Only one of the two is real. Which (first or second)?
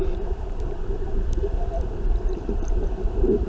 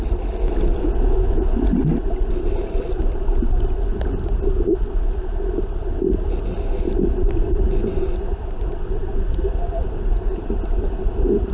second